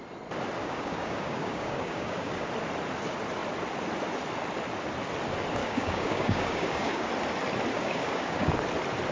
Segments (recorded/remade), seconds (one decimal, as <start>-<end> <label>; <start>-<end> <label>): 0.0-0.6 recorded; 0.6-2.5 remade; 2.5-5.6 recorded; 5.6-7.1 remade; 7.1-7.7 recorded; 7.7-8.5 remade; 8.5-9.1 recorded